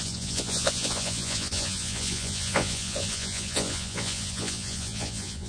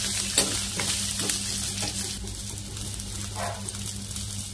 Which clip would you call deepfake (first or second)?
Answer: first